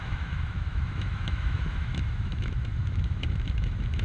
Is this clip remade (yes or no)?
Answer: yes